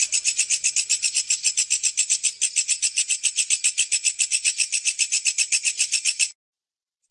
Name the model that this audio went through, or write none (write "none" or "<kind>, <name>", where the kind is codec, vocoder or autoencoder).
none